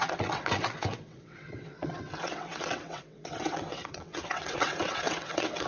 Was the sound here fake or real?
fake